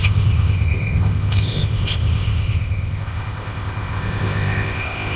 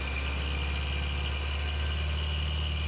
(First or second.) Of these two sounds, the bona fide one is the second